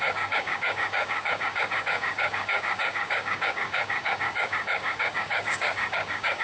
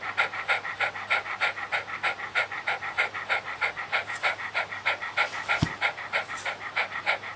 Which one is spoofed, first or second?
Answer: first